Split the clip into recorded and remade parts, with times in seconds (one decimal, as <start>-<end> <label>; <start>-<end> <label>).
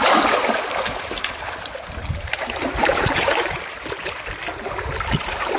0.0-2.0 recorded; 2.0-4.2 remade; 4.2-5.6 recorded